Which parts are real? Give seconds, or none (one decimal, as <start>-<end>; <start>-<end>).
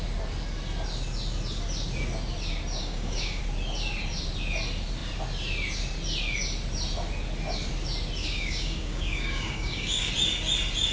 0.0-2.8; 3.4-8.2; 10.1-10.9